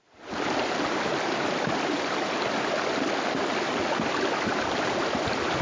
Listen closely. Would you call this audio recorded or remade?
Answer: recorded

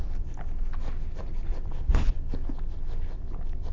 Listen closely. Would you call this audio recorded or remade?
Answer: recorded